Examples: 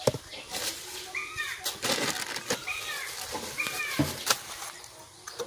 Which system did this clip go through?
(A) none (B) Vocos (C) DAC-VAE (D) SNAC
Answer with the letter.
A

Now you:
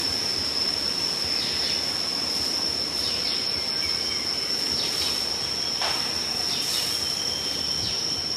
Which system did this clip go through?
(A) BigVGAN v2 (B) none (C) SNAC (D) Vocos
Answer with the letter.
B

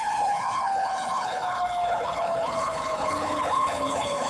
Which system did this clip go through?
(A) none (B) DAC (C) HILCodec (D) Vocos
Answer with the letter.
C